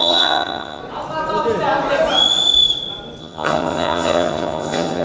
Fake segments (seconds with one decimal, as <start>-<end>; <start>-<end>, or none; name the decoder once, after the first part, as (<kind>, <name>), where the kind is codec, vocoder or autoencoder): 0.0-0.8 (vocoder, HiFi-GAN); 3.2-5.0

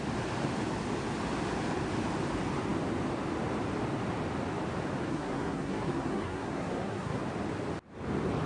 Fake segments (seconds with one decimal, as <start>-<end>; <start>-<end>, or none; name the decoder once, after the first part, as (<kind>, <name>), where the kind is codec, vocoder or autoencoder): 5.1-7.2 (codec, SNAC)

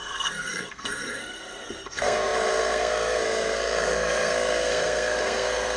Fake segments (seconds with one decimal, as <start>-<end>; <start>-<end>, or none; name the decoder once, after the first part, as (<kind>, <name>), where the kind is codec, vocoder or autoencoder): 0.0-5.8 (codec, SNAC)

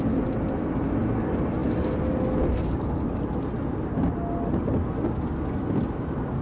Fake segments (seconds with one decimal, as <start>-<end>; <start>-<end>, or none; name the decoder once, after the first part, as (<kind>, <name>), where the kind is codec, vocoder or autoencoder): none

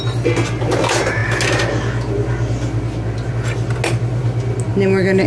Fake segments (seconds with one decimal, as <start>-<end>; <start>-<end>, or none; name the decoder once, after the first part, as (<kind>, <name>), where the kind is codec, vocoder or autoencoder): none

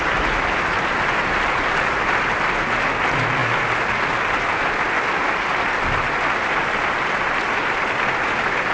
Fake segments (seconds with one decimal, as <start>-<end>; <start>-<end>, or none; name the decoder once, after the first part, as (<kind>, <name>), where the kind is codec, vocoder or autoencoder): none

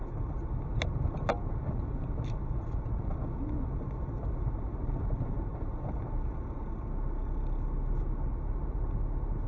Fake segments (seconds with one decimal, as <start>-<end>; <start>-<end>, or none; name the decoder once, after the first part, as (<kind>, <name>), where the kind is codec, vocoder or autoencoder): 5.5-6.0 (vocoder, BigVGAN v2)